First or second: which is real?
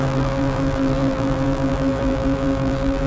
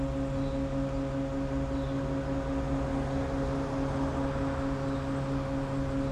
second